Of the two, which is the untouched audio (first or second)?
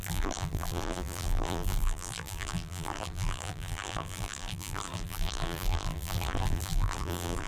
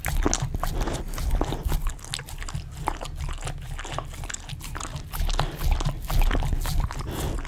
second